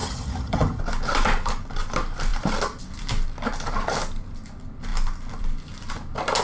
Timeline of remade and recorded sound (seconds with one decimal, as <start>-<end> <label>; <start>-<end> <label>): 0.0-0.8 remade; 0.8-6.4 recorded